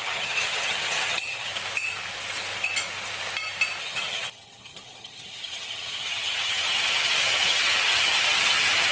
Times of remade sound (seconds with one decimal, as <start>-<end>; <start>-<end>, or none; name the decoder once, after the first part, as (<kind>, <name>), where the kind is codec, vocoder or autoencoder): 0.0-1.5 (vocoder, HiFi-GAN); 3.8-8.9

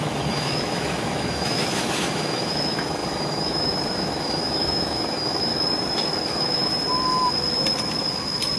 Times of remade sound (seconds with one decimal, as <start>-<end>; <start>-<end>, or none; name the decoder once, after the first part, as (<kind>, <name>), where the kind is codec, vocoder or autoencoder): 0.0-5.5 (autoencoder, DAC-VAE); 6.3-6.7